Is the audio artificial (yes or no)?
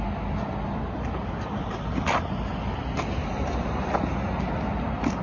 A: no